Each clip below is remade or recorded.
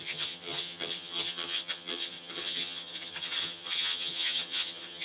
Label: remade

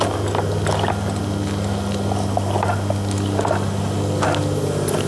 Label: recorded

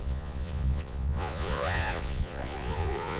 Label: remade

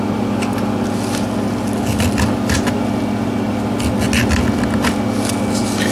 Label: recorded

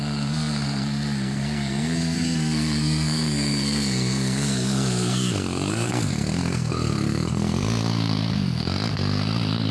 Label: remade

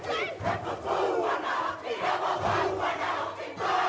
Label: recorded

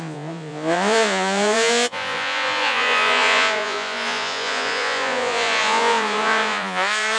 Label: remade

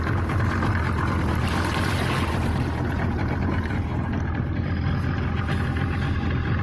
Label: recorded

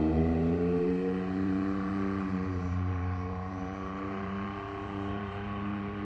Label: remade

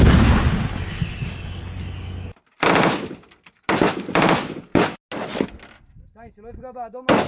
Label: recorded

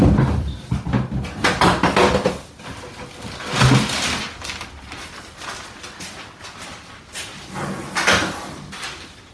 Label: recorded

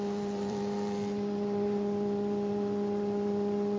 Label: remade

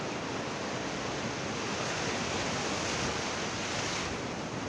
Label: recorded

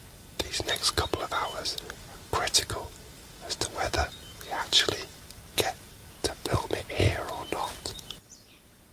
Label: recorded